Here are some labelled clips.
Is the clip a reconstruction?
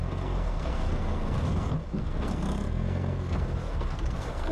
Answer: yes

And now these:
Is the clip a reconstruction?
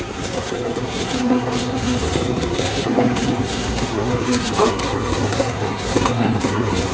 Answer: yes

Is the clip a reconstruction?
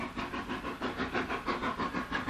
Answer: no